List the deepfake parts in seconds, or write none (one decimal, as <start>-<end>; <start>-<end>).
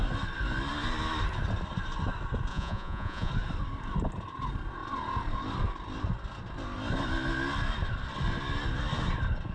2.5-3.3